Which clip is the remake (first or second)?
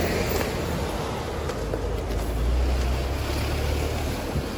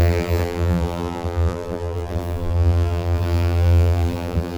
second